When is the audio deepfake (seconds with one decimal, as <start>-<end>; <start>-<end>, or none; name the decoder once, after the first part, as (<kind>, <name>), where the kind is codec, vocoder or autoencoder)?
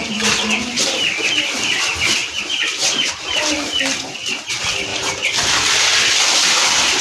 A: 2.2-3.4 (vocoder, BigVGAN v2); 4.9-5.8